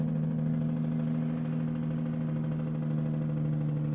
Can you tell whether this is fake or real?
real